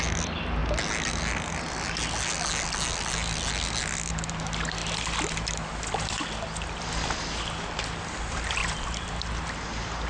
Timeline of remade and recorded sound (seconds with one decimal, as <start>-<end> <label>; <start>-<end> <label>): 0.0-4.8 recorded; 4.8-6.2 remade; 6.2-8.6 recorded; 8.6-9.3 remade; 9.3-10.1 recorded